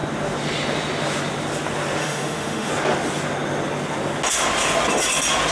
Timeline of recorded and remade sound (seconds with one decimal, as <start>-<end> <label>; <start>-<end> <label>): 0.0-2.0 recorded; 2.0-2.7 remade; 2.7-5.5 recorded